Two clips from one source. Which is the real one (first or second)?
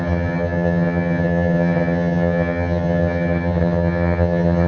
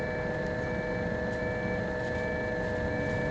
second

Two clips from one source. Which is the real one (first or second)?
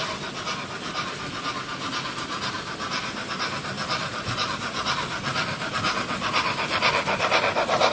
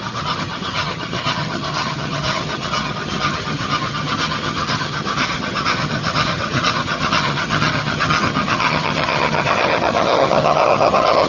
first